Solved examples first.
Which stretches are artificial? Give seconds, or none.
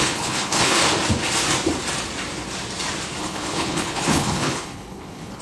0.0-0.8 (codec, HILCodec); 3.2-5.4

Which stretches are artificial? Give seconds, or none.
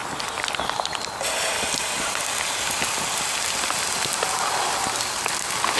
none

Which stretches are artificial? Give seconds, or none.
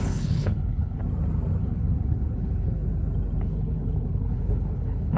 0.0-1.0 (codec, HILCodec); 1.6-2.8; 3.4-5.2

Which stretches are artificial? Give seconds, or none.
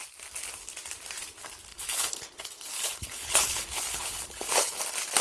1.7-4.8 (codec, HILCodec)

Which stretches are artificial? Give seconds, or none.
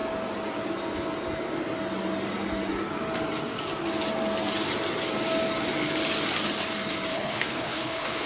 7.1-8.3 (codec, HILCodec)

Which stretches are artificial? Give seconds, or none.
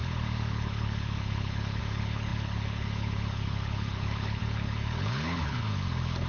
0.0-6.3 (codec, HILCodec)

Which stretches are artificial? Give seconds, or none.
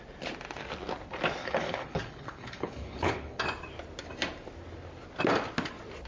1.4-3.4 (codec, HILCodec)